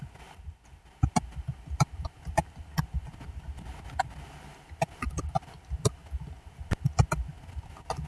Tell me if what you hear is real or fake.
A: real